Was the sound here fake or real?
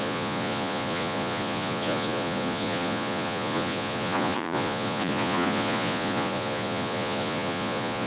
fake